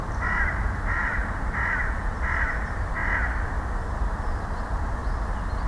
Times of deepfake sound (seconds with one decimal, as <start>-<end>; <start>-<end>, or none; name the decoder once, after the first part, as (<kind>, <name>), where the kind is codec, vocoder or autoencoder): 0.0-3.0 (vocoder, BigVGAN v2); 4.1-5.0